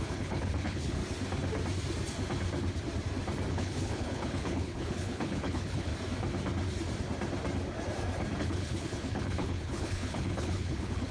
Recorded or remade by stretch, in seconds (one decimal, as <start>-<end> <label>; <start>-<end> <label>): 0.0-1.0 remade; 1.0-3.5 recorded; 3.5-5.9 remade; 5.9-8.4 recorded; 8.4-11.1 remade